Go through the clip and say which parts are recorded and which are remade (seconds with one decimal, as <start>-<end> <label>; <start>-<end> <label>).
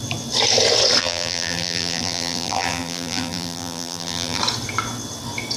0.0-1.0 recorded; 1.0-4.4 remade; 4.4-5.6 recorded